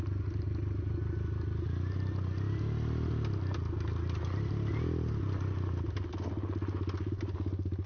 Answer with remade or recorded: recorded